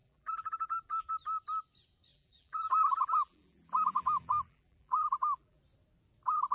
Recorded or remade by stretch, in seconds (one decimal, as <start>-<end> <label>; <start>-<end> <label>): 0.0-1.1 remade; 1.1-2.1 recorded; 2.1-5.6 remade; 5.6-6.5 recorded